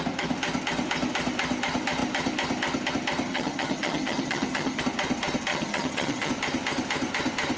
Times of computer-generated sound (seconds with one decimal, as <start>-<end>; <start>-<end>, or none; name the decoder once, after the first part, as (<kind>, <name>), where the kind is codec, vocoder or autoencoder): 3.3-4.8 (vocoder, HiFi-GAN); 5.5-6.3